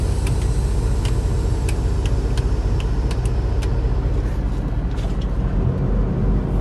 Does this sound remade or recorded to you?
recorded